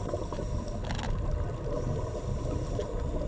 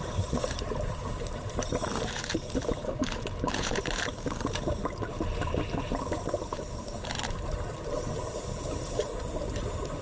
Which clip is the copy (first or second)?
second